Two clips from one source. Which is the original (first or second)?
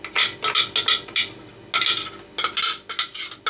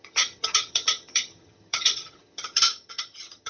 first